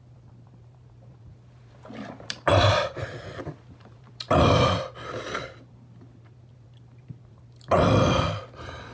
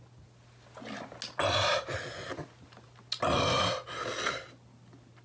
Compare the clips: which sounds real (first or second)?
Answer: second